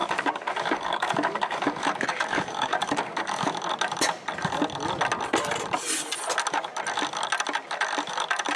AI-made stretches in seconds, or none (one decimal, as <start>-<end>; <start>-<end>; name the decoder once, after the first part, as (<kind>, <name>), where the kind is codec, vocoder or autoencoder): 0.0-3.5 (codec, DAC)